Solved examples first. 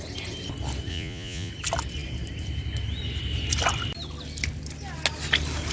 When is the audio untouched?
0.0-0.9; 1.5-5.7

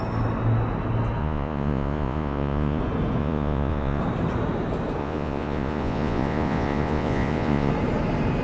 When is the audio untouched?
0.0-1.2; 2.8-3.2; 4.0-5.0; 7.7-8.4

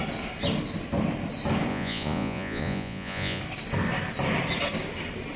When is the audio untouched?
0.0-1.7; 3.4-5.4

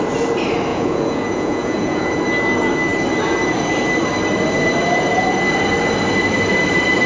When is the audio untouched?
0.0-0.7; 2.2-7.1

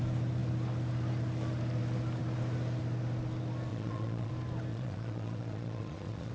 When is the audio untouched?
0.0-3.7; 4.3-4.7